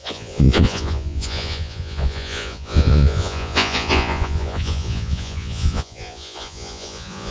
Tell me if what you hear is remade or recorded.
remade